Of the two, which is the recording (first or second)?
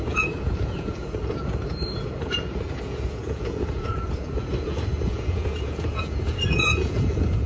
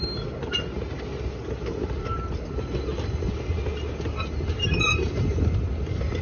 second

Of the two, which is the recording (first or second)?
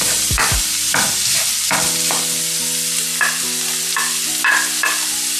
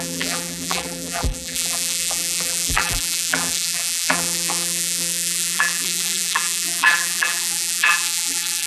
first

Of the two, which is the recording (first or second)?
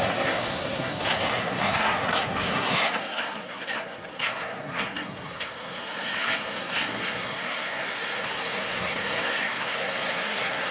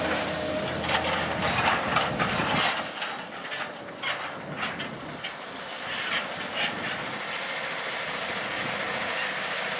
second